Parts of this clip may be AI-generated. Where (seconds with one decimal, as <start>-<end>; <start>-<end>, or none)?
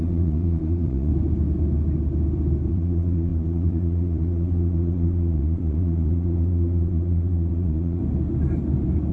0.0-1.1; 2.7-8.0